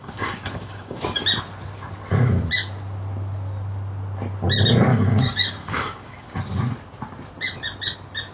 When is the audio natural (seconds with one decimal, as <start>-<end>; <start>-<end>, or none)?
1.2-4.9; 6.4-8.3